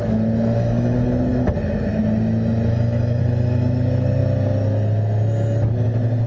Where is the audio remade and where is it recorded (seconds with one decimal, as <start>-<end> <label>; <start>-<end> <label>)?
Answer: 0.0-4.2 remade; 4.2-6.3 recorded